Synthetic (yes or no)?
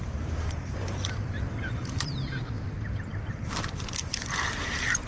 yes